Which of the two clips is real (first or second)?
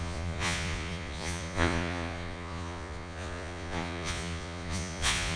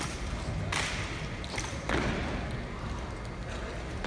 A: second